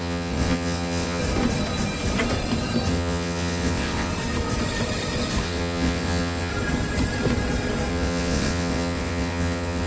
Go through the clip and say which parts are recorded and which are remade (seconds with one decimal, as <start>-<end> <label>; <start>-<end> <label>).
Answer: 0.0-1.2 remade; 1.2-2.9 recorded; 2.9-4.1 remade; 4.1-5.4 recorded; 5.4-6.5 remade; 6.5-7.9 recorded; 7.9-9.9 remade